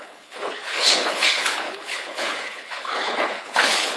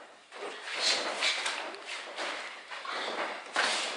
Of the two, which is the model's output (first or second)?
first